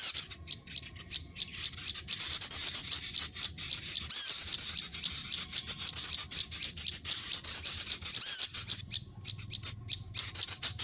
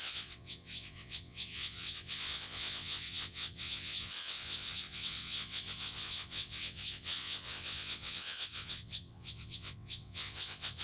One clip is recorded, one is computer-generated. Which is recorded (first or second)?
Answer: first